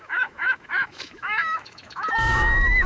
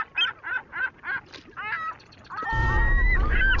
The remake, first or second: first